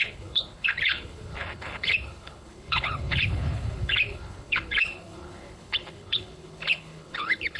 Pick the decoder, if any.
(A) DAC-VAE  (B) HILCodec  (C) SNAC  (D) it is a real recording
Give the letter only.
B